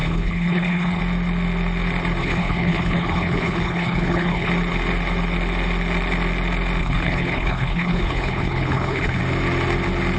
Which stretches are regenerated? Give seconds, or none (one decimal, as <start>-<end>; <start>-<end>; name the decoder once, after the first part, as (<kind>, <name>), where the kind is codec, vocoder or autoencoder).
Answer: 0.0-1.0 (codec, HILCodec); 2.2-4.5; 6.8-9.2